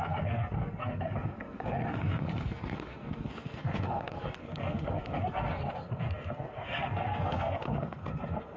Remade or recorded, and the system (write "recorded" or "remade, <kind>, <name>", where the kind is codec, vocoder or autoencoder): remade, codec, SNAC